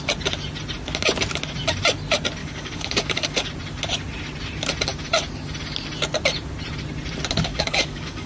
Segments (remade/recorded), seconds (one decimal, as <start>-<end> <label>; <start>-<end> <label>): 0.0-2.4 recorded; 2.4-3.5 remade; 3.5-7.5 recorded; 7.5-8.3 remade